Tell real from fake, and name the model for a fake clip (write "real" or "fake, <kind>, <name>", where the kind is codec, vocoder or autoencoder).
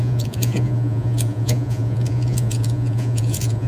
fake, vocoder, Vocos